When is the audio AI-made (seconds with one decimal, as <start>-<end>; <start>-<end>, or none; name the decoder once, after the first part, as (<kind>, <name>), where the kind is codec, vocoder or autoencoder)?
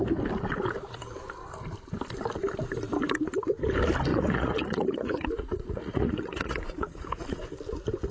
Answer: 4.1-7.4 (vocoder, Vocos)